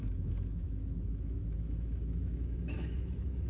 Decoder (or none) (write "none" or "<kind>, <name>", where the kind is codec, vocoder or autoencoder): autoencoder, DAC-VAE